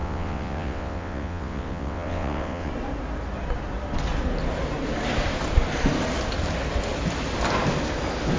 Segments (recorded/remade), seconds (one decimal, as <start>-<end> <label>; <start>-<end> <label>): 0.0-2.7 remade; 2.7-8.4 recorded